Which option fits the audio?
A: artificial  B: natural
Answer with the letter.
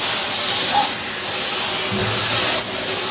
B